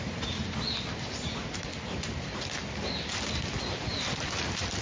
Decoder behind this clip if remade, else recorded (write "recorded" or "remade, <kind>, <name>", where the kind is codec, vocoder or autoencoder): recorded